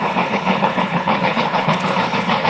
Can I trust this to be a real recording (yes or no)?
no